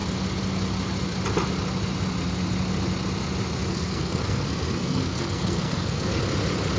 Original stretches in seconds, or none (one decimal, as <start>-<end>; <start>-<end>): 0.0-3.7; 6.2-6.8